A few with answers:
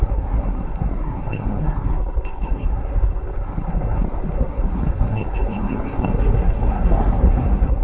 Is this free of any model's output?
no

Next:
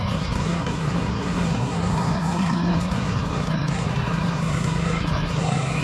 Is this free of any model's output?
no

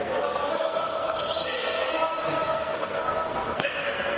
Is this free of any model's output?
no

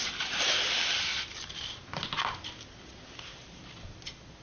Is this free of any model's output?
yes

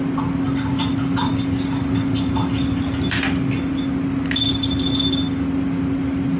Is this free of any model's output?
yes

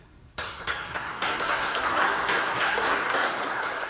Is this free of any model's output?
no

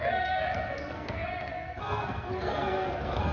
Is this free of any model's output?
no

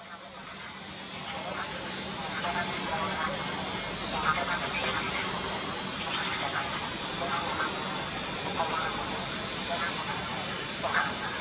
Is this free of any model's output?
yes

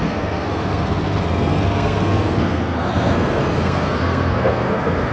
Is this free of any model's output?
no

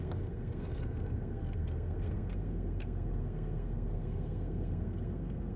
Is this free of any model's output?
no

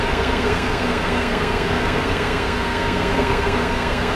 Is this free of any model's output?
no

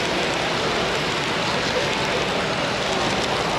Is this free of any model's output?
yes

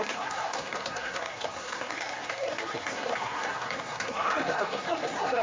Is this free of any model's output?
no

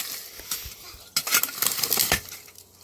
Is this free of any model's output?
yes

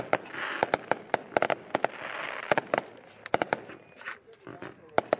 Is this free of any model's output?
yes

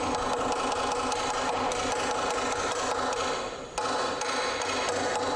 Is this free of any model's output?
yes